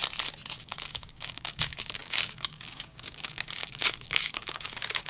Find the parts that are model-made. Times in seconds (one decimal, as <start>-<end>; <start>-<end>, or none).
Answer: 0.6-5.1